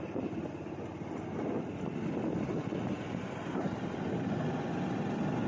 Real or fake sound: real